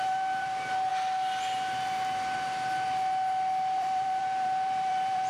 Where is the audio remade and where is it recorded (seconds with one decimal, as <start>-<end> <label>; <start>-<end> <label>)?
0.0-0.9 remade; 0.9-3.8 recorded; 3.8-5.3 remade